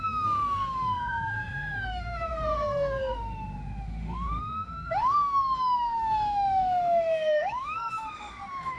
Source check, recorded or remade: remade